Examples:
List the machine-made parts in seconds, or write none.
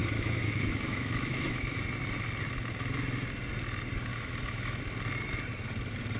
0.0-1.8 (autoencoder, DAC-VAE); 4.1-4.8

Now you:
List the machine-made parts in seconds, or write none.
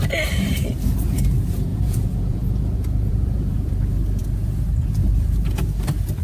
1.7-3.7 (vocoder, Vocos)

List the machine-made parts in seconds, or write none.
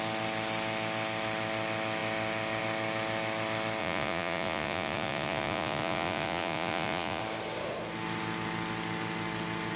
3.8-7.2 (vocoder, Vocos)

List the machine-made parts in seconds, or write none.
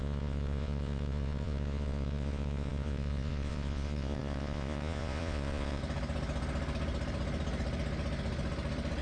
0.0-5.8 (vocoder, Vocos)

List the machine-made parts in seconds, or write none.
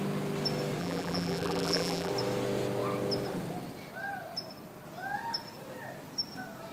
0.8-2.1 (vocoder, BigVGAN v2)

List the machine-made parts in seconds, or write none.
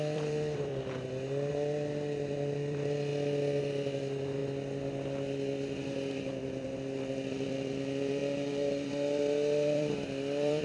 0.0-0.7 (vocoder, BigVGAN v2); 1.5-3.1; 3.6-4.4; 6.4-10.6